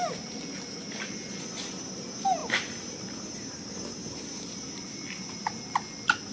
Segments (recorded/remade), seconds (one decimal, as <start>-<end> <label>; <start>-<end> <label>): 0.0-6.3 recorded